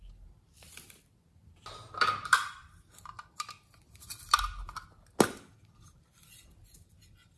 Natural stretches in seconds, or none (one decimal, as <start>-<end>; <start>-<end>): 0.0-7.4